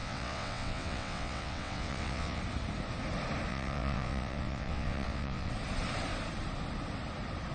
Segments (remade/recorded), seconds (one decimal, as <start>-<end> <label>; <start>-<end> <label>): 0.0-2.4 remade; 2.4-3.5 recorded; 3.5-5.5 remade; 5.5-7.5 recorded